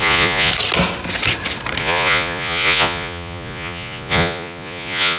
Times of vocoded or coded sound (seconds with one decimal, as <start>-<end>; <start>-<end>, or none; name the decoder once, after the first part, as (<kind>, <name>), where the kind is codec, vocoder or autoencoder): 0.0-0.5 (vocoder, Vocos); 1.8-5.2